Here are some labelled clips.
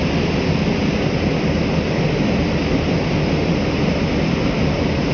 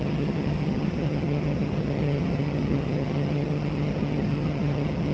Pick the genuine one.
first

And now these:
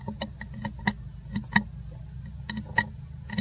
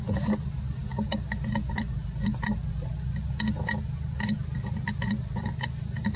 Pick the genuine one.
first